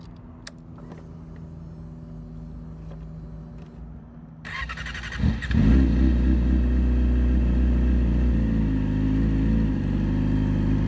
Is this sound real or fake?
real